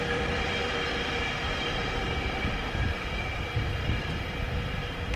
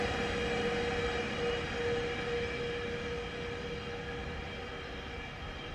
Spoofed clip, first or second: first